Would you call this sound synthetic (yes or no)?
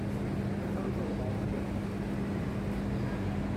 no